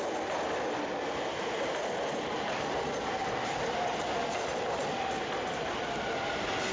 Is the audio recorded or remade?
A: recorded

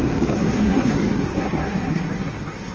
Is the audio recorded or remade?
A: remade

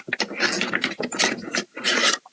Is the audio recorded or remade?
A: recorded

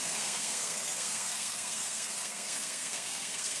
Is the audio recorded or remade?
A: remade